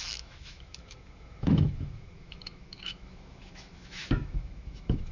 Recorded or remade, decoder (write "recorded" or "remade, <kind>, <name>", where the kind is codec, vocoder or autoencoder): remade, autoencoder, DAC-VAE